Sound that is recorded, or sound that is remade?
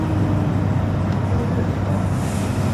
recorded